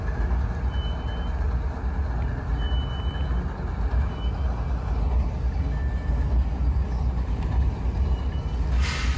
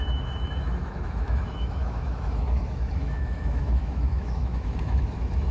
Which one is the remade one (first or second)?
second